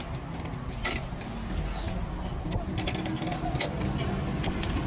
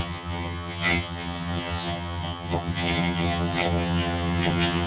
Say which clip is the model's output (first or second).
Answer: second